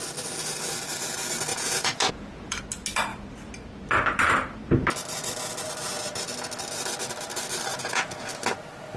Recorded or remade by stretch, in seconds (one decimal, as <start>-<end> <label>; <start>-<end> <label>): 0.0-1.5 recorded; 1.5-2.6 remade; 2.6-7.7 recorded; 7.7-8.3 remade; 8.3-9.0 recorded